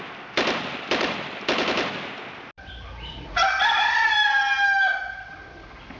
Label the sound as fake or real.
real